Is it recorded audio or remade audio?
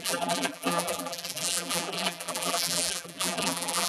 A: remade